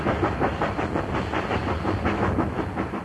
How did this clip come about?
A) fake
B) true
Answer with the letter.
B